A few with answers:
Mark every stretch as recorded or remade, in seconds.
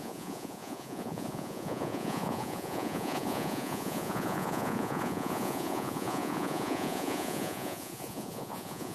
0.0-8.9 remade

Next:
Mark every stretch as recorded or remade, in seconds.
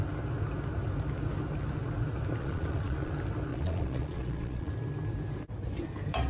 0.0-2.4 recorded; 2.4-3.1 remade; 3.1-3.5 recorded; 3.5-4.7 remade; 4.7-6.3 recorded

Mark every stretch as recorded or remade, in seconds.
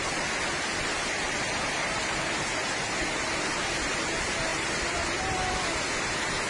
0.0-6.5 recorded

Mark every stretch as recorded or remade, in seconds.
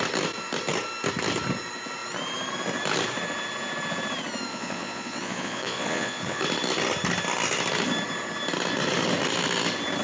0.0-4.5 recorded; 4.5-6.4 remade; 6.4-10.0 recorded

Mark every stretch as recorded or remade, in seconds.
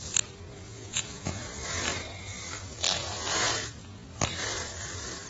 0.0-0.7 recorded; 0.7-1.4 remade; 1.4-5.3 recorded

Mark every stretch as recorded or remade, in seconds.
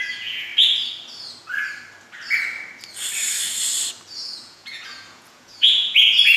0.0-0.5 remade; 0.5-4.1 recorded; 4.1-6.4 remade